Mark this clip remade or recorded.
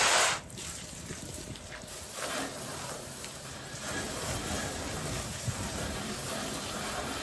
remade